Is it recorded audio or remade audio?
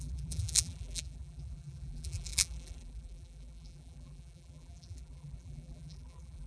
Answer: remade